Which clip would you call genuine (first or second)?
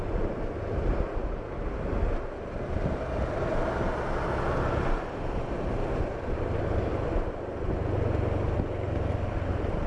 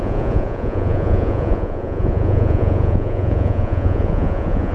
first